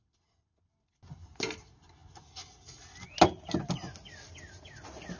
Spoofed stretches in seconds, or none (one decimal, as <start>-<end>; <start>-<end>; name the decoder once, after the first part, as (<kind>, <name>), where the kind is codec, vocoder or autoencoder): none